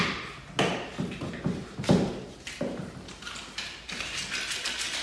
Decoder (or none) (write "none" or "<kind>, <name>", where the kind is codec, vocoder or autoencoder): none